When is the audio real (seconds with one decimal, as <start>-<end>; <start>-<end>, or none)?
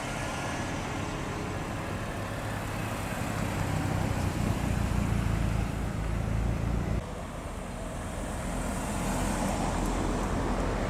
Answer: 0.0-10.9